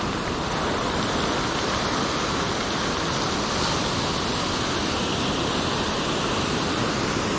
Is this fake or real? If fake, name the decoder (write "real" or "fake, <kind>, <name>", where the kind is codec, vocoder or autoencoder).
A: real